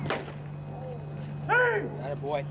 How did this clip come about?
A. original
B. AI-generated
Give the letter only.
A